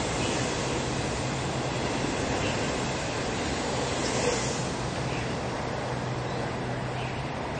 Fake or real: real